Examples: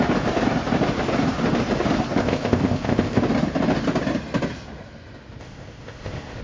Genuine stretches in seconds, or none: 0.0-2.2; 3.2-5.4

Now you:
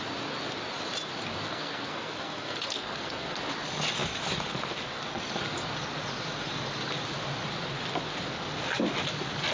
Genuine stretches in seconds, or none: 0.0-1.5; 3.4-9.5